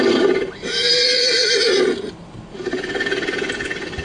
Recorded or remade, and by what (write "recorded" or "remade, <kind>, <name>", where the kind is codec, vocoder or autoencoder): recorded